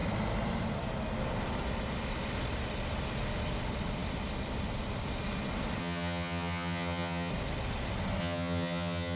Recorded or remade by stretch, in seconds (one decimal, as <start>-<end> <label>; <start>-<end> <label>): 0.0-5.8 recorded; 5.8-7.3 remade; 7.3-8.2 recorded; 8.2-9.2 remade